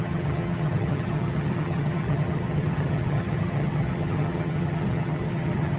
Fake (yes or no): yes